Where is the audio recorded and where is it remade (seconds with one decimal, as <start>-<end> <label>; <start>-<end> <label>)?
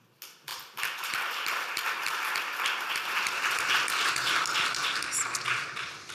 0.0-6.1 recorded